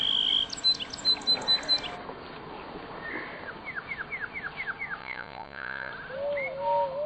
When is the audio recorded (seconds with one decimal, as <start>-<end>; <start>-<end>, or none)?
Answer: 0.0-5.0; 5.9-7.1